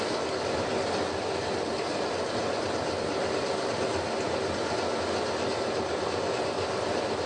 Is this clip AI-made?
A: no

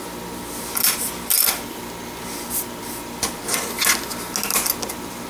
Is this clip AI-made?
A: no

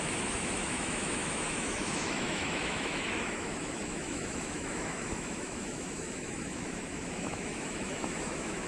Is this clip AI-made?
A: yes